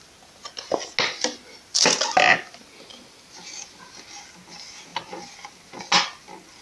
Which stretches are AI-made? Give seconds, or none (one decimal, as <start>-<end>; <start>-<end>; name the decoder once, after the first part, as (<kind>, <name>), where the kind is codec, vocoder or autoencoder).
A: none